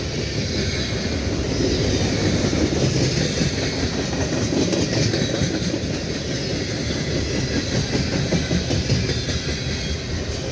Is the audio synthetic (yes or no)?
no